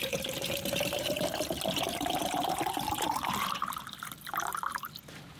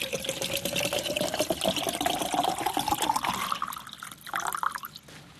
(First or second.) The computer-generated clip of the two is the first